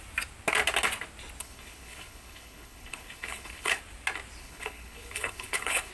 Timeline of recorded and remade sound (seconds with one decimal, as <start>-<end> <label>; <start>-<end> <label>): 0.0-1.4 recorded; 1.4-3.8 remade; 3.8-4.4 recorded; 4.4-5.9 remade